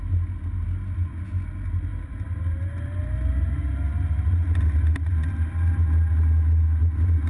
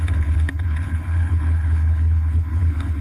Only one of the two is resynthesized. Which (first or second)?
second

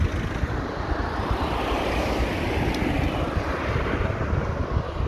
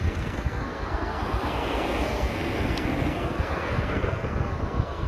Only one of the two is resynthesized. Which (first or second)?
second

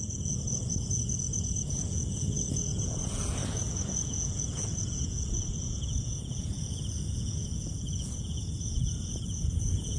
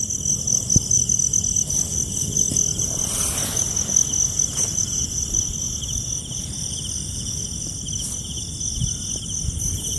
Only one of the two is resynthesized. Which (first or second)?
first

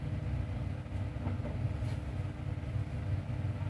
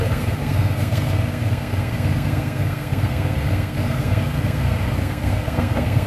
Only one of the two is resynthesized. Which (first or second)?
second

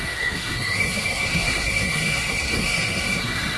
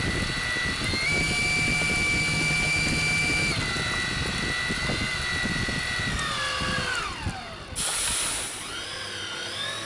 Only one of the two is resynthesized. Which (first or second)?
first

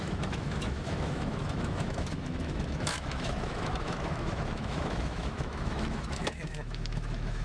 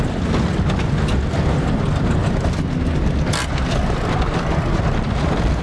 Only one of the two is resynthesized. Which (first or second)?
first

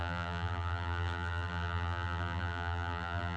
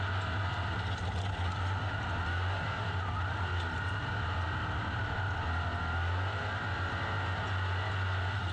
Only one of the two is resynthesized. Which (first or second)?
first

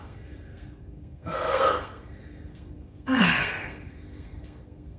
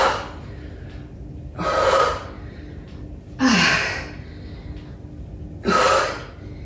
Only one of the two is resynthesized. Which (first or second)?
first